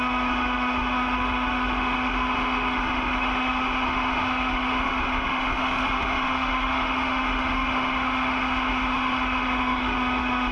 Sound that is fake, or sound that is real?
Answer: fake